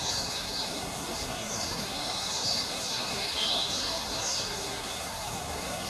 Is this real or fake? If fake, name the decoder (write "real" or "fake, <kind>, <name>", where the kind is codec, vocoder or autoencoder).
fake, codec, SNAC